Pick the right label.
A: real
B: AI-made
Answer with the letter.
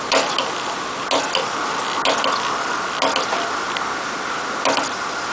A